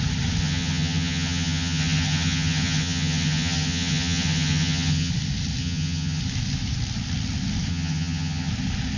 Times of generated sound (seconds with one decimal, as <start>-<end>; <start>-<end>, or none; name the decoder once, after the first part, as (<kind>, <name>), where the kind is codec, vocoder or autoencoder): 0.4-5.1 (vocoder, HiFi-GAN); 5.6-6.2; 7.7-8.5